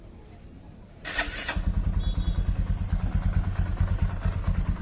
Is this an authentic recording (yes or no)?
yes